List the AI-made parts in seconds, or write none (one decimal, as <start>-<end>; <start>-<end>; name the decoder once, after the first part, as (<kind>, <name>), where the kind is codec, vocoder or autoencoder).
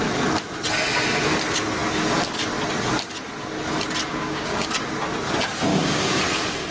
4.1-4.7 (codec, DAC); 5.7-6.2